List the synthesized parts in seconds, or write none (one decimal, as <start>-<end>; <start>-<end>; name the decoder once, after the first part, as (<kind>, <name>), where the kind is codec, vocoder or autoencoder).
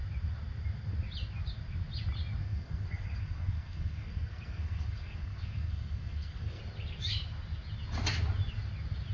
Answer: 2.4-6.6 (codec, SNAC)